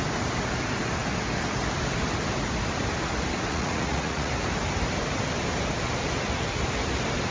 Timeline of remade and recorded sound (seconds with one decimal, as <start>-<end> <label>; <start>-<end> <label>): 0.0-3.5 recorded; 3.5-4.3 remade; 4.3-7.3 recorded